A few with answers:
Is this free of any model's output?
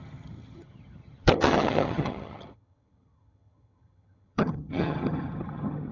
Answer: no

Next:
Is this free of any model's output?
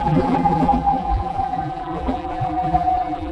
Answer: no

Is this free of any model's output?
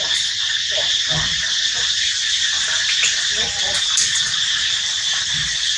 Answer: no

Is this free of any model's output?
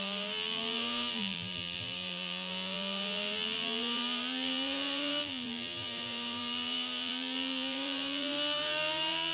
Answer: no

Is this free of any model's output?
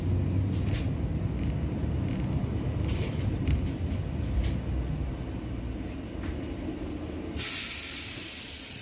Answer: yes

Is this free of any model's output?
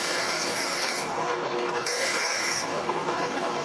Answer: no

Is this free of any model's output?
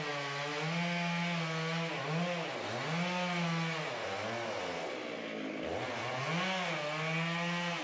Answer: yes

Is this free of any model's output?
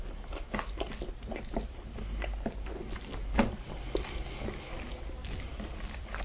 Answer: yes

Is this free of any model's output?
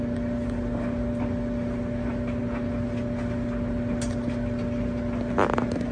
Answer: yes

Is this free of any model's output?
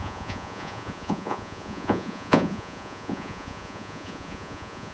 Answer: no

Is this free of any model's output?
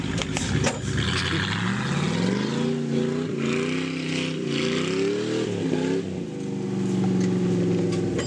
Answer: yes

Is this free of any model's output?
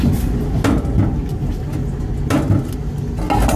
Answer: yes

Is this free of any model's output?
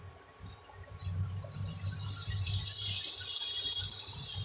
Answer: yes